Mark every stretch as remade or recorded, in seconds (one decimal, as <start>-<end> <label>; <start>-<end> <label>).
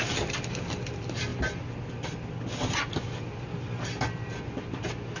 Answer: 0.0-5.2 recorded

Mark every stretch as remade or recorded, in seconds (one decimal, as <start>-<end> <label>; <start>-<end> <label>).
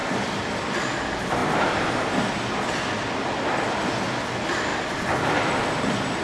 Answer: 0.0-0.6 remade; 0.6-4.7 recorded; 4.7-5.8 remade; 5.8-6.2 recorded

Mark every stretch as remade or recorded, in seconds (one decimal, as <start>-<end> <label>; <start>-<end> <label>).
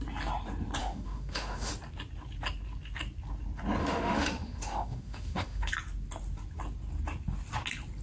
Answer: 0.0-0.8 recorded; 0.8-1.7 remade; 1.7-3.8 recorded; 3.8-5.7 remade; 5.7-8.0 recorded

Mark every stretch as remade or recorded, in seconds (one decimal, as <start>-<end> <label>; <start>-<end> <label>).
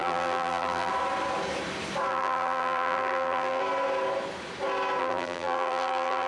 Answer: 0.0-0.9 remade; 0.9-2.1 recorded; 2.1-3.6 remade; 3.6-5.0 recorded; 5.0-6.3 remade